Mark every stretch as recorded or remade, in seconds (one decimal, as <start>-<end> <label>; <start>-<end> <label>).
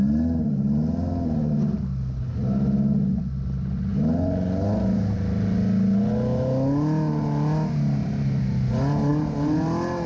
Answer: 0.0-10.1 recorded